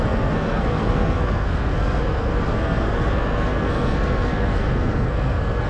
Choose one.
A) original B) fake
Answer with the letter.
B